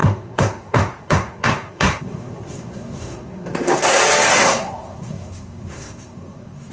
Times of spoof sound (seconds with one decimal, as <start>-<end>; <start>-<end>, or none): 0.0-4.0; 4.4-6.7

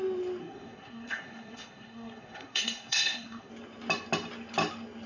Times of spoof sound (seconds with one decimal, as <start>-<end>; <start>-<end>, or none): 0.4-3.5